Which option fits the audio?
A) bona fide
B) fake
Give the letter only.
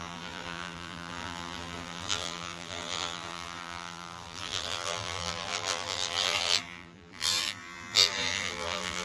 B